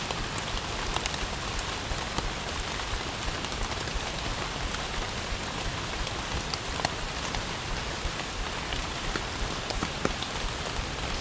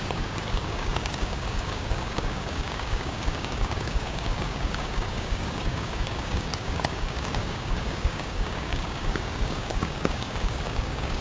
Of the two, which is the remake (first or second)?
second